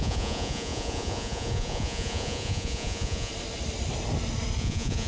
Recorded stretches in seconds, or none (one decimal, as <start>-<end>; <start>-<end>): 3.3-4.6